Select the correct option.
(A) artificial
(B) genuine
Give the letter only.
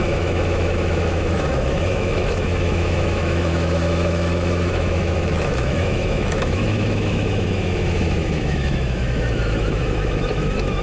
A